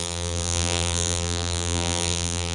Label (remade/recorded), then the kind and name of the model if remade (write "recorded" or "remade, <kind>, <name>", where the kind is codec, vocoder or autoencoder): remade, vocoder, BigVGAN v2